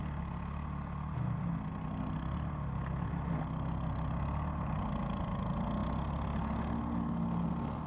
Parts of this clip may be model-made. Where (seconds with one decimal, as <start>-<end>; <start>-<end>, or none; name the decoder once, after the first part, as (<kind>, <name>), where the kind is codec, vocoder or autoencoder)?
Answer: none